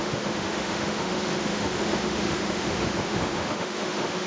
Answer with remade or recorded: remade